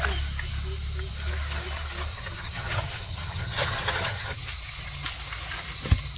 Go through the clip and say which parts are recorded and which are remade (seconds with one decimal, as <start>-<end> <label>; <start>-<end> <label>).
0.0-2.1 recorded; 2.1-4.5 remade; 4.5-6.2 recorded